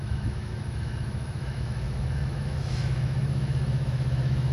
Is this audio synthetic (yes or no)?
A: yes